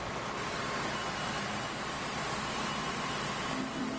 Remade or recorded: recorded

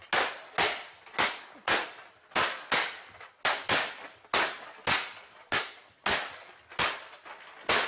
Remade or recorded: recorded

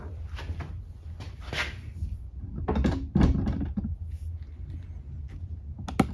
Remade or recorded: recorded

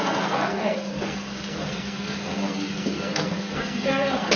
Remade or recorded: remade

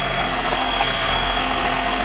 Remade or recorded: remade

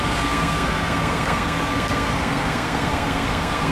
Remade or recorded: remade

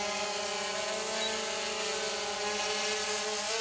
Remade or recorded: recorded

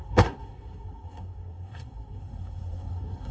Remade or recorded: remade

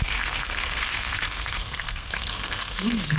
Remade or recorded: remade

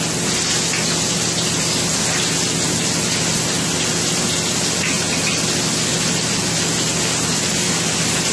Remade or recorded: recorded